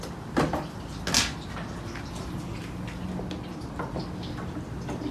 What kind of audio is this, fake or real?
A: real